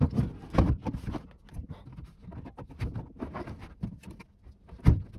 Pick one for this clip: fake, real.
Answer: real